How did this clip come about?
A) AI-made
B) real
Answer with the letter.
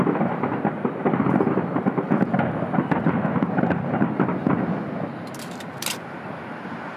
B